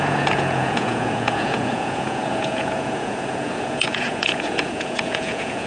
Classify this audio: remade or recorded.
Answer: remade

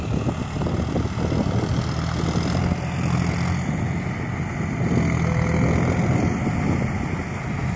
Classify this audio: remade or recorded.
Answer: recorded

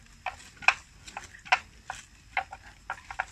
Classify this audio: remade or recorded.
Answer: recorded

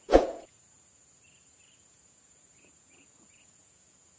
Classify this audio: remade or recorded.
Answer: remade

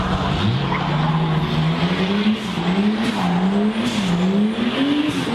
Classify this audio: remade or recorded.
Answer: recorded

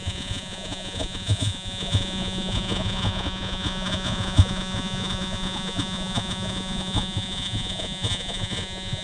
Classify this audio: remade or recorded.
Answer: remade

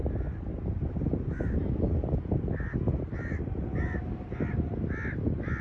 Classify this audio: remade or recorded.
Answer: recorded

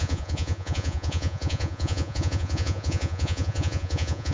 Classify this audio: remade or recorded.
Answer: remade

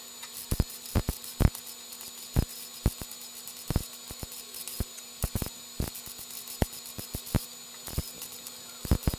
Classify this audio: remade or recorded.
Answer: recorded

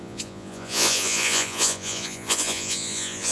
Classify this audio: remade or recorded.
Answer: remade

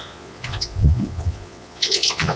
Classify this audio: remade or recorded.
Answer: remade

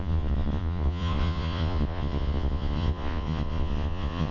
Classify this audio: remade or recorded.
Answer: remade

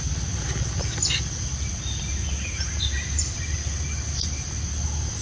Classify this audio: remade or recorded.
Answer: recorded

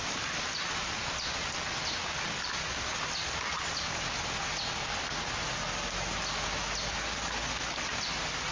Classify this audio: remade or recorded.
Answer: recorded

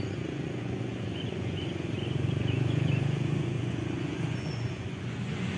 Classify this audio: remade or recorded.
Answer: remade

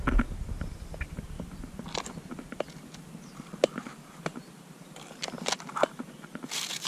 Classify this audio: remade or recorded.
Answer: recorded